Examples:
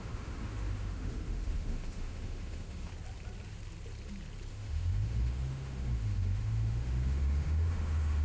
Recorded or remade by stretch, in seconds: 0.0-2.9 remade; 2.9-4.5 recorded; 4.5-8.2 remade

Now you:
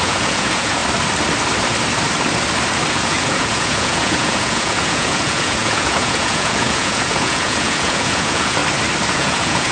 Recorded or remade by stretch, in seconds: 0.0-0.8 remade; 0.8-2.9 recorded; 2.9-8.6 remade; 8.6-9.1 recorded; 9.1-9.7 remade

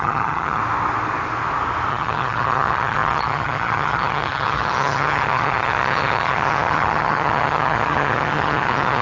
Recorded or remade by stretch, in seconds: 0.0-0.6 remade; 0.6-1.9 recorded; 1.9-9.0 remade

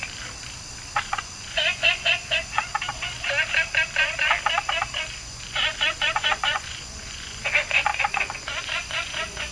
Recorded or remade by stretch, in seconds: 0.0-0.9 recorded; 0.9-2.7 remade; 2.7-5.2 recorded; 5.2-9.5 remade

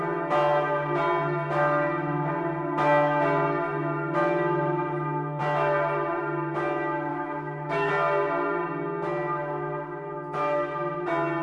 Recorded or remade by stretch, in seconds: 0.0-7.1 recorded; 7.1-7.9 remade; 7.9-11.4 recorded

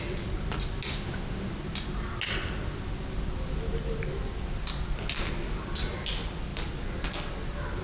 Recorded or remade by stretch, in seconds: 0.0-0.9 recorded; 0.9-1.5 remade; 1.5-7.8 recorded